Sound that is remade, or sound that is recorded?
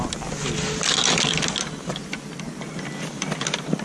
recorded